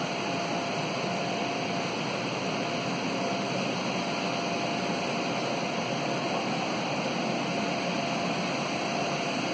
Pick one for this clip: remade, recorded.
recorded